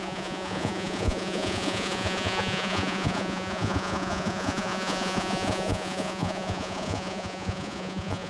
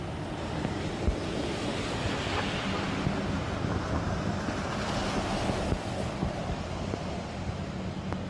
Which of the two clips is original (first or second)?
second